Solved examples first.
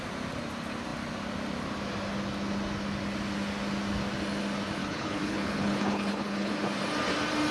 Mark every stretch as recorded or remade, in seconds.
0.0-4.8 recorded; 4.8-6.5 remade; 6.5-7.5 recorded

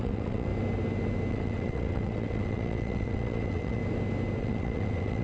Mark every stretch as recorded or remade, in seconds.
0.0-0.5 remade; 0.5-1.3 recorded; 1.3-3.8 remade; 3.8-4.4 recorded; 4.4-5.2 remade

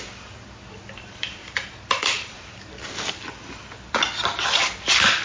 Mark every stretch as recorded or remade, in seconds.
0.0-1.4 recorded; 1.4-2.6 remade; 2.6-5.2 recorded

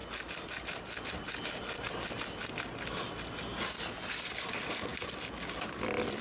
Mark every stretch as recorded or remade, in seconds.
0.0-6.2 recorded

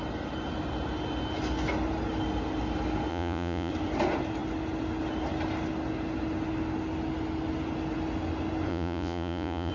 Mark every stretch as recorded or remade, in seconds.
0.0-3.1 recorded; 3.1-3.7 remade; 3.7-8.7 recorded; 8.7-9.7 remade

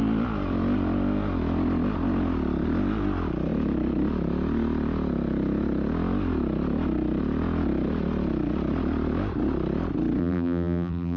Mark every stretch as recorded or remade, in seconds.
0.0-10.2 recorded; 10.2-11.2 remade

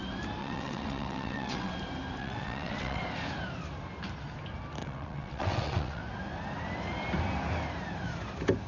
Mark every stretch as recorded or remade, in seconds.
0.0-0.4 recorded; 0.4-1.7 remade; 1.7-2.2 recorded; 2.2-3.0 remade; 3.0-4.8 recorded; 4.8-6.0 remade; 6.0-8.7 recorded